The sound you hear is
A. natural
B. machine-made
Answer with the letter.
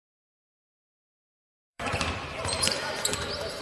B